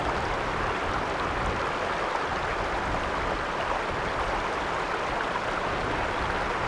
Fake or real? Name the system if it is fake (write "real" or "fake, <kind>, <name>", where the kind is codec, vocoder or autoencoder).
real